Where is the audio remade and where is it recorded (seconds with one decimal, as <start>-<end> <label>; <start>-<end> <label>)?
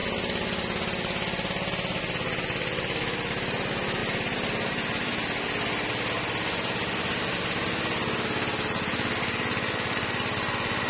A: 0.0-10.9 recorded